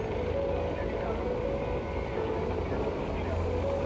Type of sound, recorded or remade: recorded